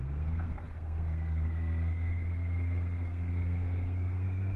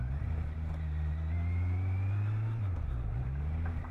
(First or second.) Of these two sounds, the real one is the second